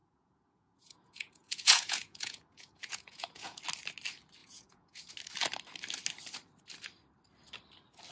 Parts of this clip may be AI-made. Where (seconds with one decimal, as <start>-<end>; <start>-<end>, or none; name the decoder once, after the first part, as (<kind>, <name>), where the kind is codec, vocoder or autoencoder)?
0.0-3.6 (vocoder, Vocos); 4.4-5.1